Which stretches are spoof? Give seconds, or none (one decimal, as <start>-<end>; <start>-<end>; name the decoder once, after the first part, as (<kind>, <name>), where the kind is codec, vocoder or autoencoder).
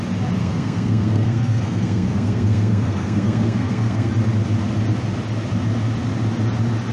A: 0.4-4.1 (codec, SNAC)